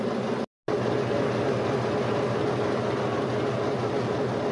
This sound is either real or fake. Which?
real